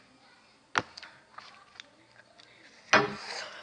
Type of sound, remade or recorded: recorded